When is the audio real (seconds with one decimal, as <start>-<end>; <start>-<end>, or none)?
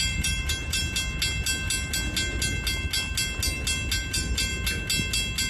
0.8-4.1; 4.5-5.5